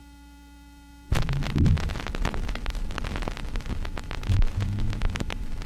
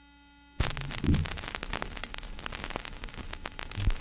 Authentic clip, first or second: second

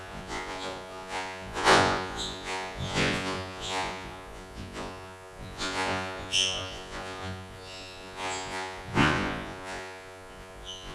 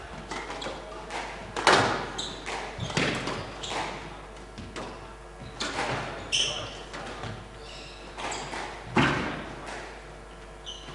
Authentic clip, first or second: second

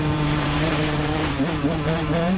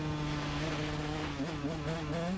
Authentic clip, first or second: second